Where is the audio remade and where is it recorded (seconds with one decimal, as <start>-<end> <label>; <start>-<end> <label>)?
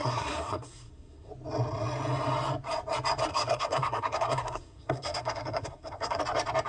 0.0-1.3 remade; 1.3-3.3 recorded; 3.3-6.2 remade; 6.2-6.7 recorded